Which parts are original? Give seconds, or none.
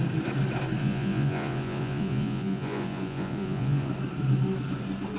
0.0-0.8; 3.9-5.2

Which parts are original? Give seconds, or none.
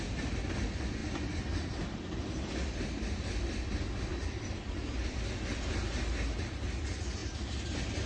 0.0-8.1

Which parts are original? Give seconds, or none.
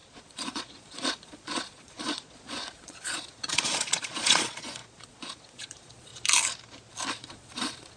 6.1-7.1